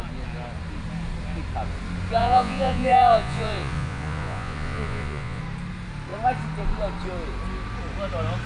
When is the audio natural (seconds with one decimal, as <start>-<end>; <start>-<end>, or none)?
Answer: 0.0-2.2; 5.4-8.5